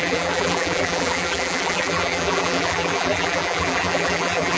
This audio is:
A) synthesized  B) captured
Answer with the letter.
A